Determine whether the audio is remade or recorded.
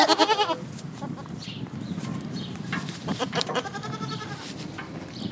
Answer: remade